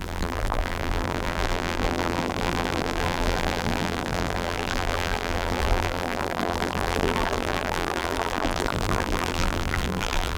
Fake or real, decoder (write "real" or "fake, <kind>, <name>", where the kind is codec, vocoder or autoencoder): fake, vocoder, BigVGAN v2